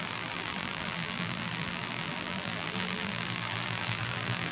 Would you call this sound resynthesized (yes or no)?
yes